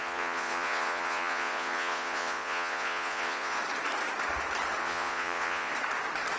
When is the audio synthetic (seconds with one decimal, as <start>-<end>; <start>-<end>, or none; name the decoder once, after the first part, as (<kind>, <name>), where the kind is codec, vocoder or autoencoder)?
0.0-3.6 (vocoder, Vocos); 4.8-5.7